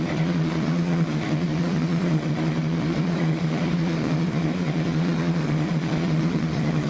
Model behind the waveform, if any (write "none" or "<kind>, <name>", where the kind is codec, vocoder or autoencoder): vocoder, Vocos